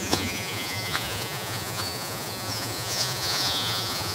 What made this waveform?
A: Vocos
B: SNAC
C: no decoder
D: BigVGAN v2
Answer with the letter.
A